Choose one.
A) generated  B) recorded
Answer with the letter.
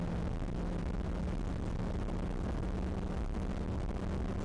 B